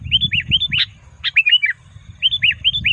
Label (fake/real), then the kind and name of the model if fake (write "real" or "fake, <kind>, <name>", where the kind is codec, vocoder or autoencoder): real